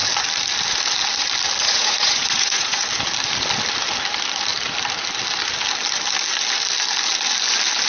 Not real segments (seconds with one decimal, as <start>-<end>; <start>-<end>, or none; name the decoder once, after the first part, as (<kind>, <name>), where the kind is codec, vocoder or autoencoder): 1.6-2.8 (vocoder, Vocos)